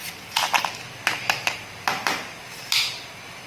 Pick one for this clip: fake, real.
real